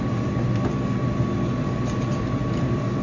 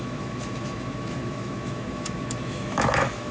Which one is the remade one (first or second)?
second